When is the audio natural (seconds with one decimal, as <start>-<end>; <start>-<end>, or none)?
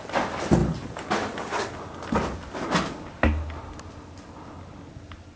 0.0-5.4